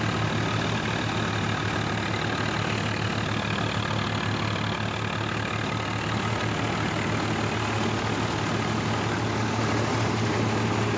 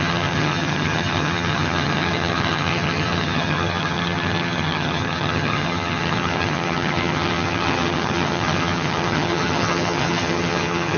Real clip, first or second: first